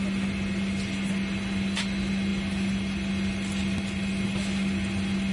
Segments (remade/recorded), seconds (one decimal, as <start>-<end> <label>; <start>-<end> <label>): 0.0-5.3 recorded